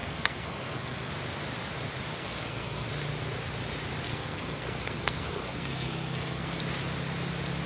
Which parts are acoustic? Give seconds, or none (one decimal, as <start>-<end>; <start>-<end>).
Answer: 1.1-2.1; 2.9-4.1; 6.6-7.7